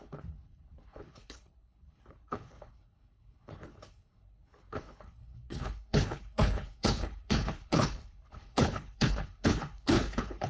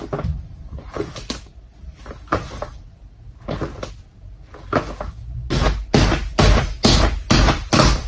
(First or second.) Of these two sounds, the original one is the second